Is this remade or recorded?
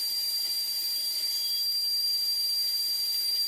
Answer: remade